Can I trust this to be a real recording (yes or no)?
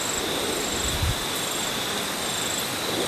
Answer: yes